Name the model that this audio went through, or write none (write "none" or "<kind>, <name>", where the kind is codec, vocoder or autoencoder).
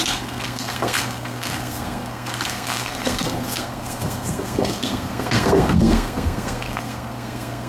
codec, SNAC